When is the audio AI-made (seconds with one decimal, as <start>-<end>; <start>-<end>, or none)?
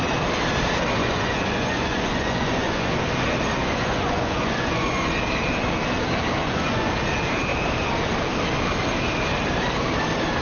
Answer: 1.0-2.9; 3.6-5.1; 6.4-6.9